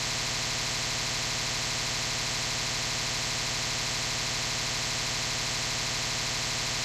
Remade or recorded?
recorded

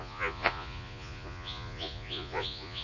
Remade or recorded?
remade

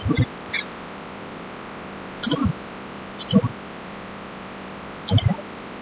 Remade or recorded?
recorded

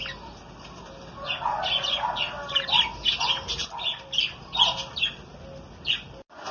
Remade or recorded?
recorded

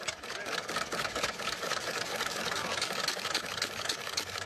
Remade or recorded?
remade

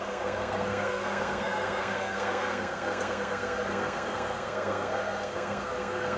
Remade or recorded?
remade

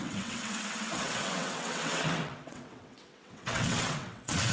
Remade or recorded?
remade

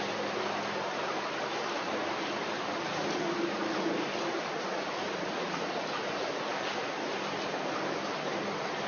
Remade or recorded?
recorded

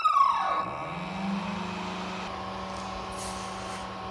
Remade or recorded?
recorded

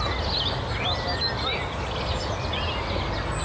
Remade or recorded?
recorded